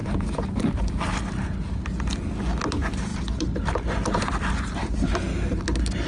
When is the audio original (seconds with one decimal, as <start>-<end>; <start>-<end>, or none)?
1.1-6.1